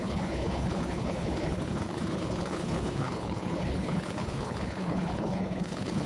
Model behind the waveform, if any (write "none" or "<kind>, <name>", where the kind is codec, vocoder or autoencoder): codec, HILCodec